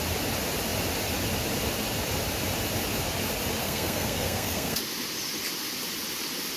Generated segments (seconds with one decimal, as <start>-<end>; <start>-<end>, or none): 3.6-4.8